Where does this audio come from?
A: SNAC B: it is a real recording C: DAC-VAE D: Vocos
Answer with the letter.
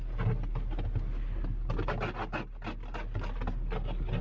B